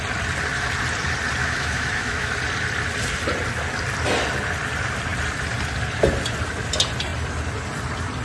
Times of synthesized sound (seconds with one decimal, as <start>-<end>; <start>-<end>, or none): 1.4-2.3